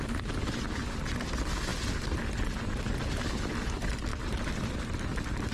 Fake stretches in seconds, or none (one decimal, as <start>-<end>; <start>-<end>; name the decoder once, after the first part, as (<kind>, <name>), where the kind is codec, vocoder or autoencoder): none